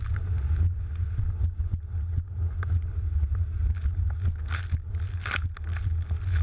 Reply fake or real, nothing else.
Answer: real